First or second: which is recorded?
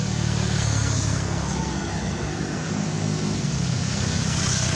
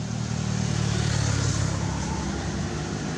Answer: second